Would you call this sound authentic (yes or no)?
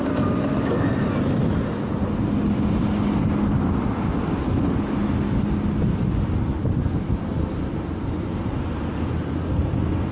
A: yes